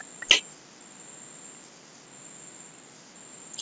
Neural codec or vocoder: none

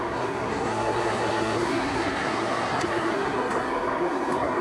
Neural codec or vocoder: codec, SNAC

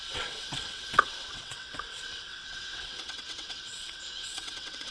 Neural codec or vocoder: vocoder, WaveNeXt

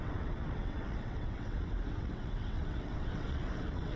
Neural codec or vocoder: vocoder, WaveNeXt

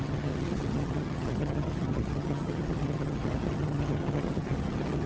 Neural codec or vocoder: vocoder, HiFi-GAN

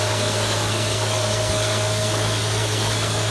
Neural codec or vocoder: codec, SNAC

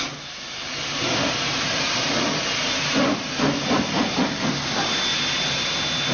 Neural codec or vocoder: none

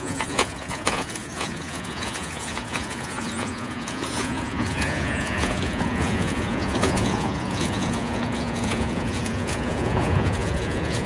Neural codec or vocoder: vocoder, Vocos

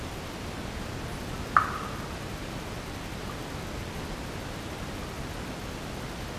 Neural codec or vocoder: none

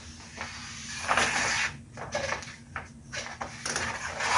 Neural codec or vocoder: none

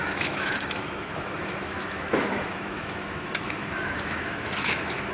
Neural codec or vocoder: autoencoder, DAC-VAE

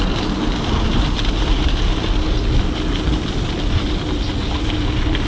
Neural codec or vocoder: none